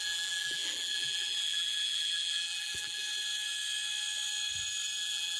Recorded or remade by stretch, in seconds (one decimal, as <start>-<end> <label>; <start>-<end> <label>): 0.0-3.0 remade; 3.0-5.0 recorded; 5.0-5.4 remade